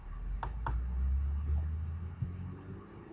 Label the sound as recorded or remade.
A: recorded